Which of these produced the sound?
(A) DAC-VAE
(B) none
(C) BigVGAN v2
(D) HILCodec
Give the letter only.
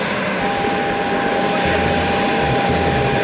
B